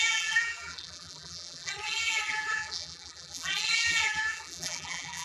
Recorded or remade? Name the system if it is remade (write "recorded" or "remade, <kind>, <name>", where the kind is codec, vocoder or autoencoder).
remade, vocoder, BigVGAN v2